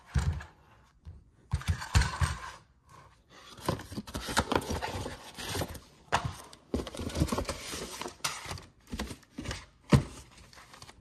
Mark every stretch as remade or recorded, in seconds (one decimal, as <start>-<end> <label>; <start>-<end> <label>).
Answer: 0.0-2.1 remade; 2.1-2.6 recorded; 2.6-3.4 remade; 3.4-4.0 recorded; 4.0-8.3 remade; 8.3-11.0 recorded